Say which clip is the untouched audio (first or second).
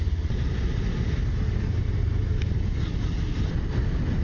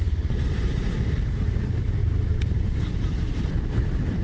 first